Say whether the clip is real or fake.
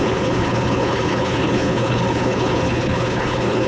fake